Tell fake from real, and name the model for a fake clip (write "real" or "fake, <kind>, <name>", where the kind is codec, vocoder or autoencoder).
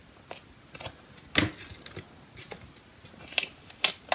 real